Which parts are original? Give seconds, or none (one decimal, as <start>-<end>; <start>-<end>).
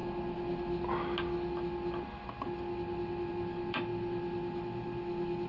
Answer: 0.0-5.5